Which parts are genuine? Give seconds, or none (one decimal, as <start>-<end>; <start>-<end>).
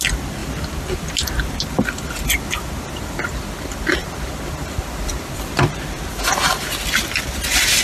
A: 0.0-0.4; 2.1-4.0; 6.1-7.8